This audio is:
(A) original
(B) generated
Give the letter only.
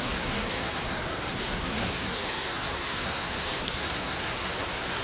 B